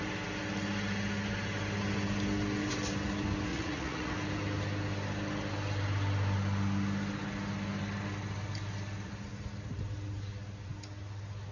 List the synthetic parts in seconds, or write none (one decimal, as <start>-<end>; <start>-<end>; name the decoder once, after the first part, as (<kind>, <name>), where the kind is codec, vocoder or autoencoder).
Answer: 3.5-4.1 (vocoder, Vocos)